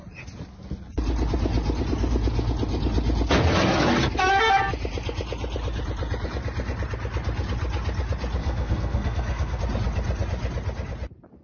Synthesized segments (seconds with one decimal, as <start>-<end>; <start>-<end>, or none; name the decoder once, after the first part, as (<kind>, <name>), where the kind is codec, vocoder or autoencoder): 8.4-9.6 (codec, SNAC)